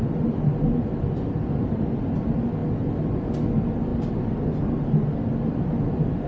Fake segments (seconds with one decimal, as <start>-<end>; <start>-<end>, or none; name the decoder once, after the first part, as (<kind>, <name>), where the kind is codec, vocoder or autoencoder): none